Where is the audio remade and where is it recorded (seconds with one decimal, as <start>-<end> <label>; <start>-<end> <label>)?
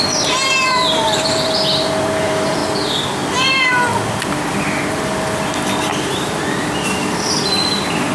0.0-2.6 remade; 2.6-6.0 recorded; 6.0-8.1 remade